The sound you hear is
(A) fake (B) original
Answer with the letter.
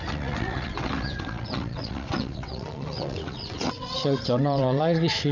A